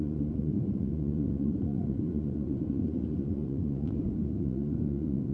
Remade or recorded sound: remade